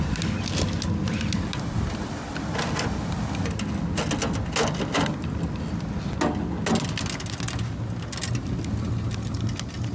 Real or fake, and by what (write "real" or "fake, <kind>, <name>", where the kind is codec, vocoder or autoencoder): real